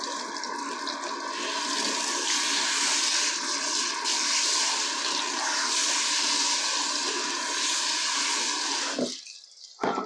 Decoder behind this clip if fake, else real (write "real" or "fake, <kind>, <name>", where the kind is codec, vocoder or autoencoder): real